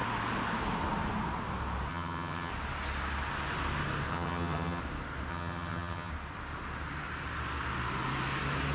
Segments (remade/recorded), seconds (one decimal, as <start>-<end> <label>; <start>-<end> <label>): 0.0-1.9 recorded; 1.9-2.5 remade; 2.5-4.1 recorded; 4.1-4.8 remade; 4.8-5.3 recorded; 5.3-6.1 remade; 6.1-8.7 recorded